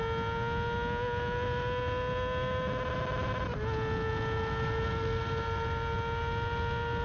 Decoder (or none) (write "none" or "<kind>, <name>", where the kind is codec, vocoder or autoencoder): none